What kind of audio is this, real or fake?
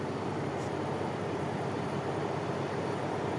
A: fake